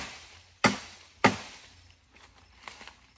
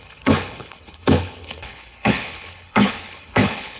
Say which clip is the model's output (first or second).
second